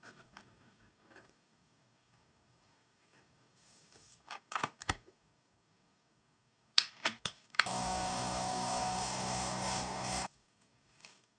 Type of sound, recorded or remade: remade